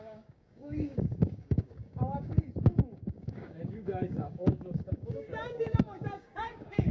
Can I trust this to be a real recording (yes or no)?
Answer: no